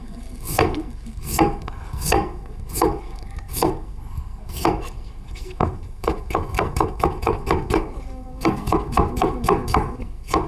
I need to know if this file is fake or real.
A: fake